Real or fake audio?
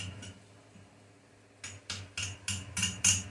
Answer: real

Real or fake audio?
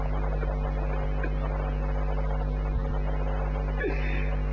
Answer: real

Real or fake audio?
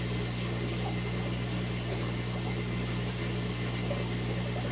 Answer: real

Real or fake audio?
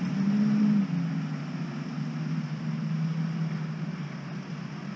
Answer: real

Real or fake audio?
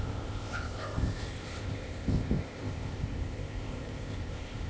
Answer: fake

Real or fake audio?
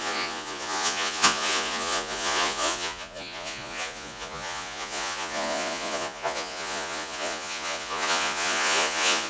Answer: fake